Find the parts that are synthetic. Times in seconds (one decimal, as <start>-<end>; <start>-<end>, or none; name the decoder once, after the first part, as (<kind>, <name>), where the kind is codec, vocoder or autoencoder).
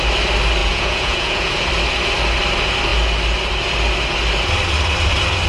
0.6-1.7 (vocoder, Vocos)